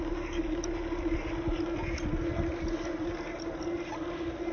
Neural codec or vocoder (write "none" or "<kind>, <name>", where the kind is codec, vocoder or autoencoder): none